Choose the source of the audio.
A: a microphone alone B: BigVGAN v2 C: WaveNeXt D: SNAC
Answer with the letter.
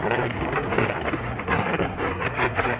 D